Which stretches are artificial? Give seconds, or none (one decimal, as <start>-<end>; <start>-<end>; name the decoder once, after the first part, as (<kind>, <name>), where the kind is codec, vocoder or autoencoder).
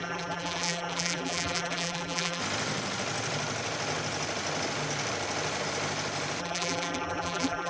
0.0-2.4 (vocoder, BigVGAN v2); 6.4-7.7